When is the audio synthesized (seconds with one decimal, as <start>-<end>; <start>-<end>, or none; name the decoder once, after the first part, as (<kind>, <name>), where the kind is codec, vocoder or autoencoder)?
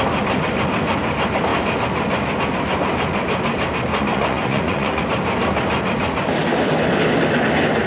3.9-5.0 (vocoder, Vocos)